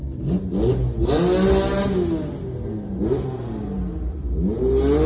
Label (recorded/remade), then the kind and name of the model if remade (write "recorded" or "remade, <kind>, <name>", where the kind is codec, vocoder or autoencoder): recorded